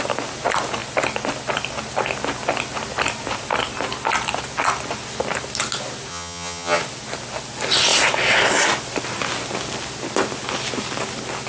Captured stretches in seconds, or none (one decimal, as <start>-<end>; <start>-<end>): 0.0-6.1; 6.8-11.5